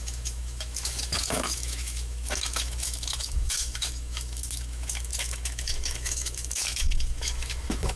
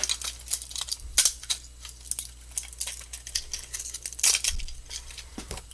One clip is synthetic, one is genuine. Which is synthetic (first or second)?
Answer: first